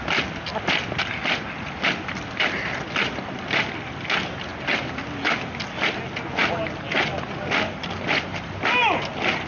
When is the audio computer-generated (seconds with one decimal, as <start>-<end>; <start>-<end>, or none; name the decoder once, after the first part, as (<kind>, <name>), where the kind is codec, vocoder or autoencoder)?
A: none